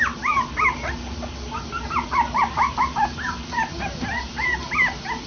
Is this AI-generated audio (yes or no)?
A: no